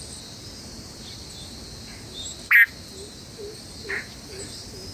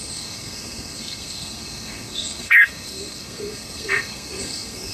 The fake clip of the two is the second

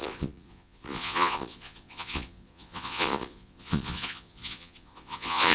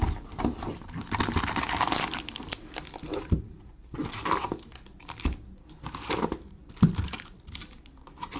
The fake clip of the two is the first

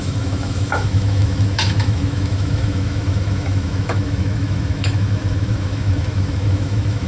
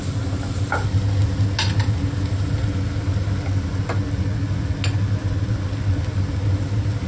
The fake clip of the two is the first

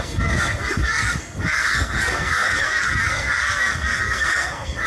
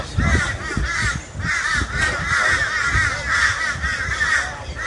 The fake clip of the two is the first